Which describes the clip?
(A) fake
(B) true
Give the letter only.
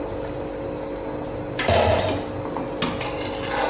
B